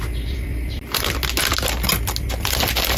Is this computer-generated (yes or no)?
no